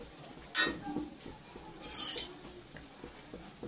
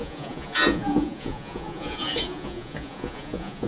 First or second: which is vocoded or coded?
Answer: second